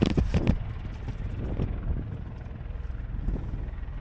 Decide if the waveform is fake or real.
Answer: real